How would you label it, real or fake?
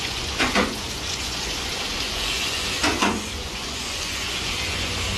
fake